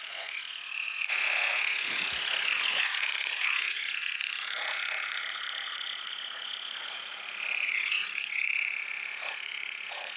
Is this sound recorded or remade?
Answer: remade